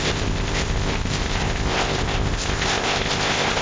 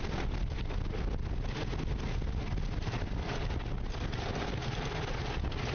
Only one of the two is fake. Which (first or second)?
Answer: first